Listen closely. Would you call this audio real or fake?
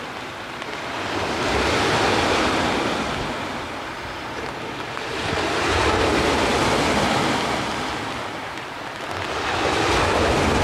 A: real